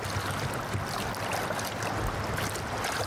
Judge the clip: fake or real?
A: real